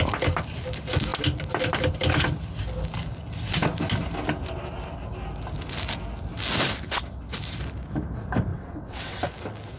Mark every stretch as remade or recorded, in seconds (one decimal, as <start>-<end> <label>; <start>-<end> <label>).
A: 0.0-8.5 recorded; 8.5-9.2 remade; 9.2-9.8 recorded